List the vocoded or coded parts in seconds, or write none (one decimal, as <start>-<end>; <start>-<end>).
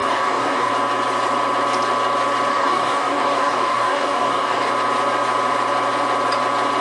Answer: 0.0-0.7; 2.5-4.7